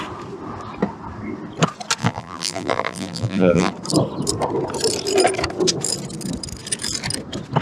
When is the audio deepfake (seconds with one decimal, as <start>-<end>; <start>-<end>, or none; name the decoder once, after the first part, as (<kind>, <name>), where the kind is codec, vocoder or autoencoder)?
2.0-3.7 (vocoder, BigVGAN v2)